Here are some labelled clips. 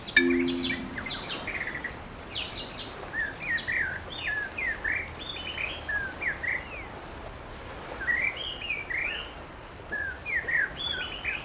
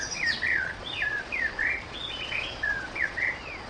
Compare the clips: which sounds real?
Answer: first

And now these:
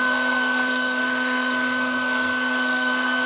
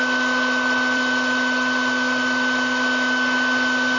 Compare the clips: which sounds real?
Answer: second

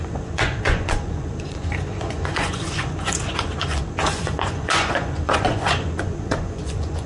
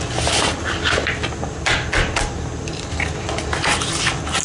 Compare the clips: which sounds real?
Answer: second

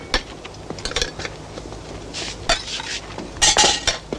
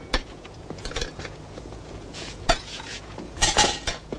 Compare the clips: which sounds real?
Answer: first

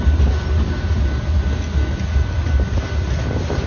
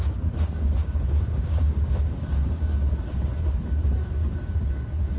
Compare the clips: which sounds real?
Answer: first